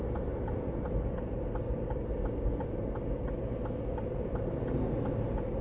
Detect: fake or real real